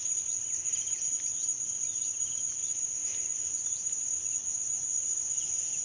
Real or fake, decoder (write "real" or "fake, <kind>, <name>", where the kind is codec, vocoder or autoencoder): real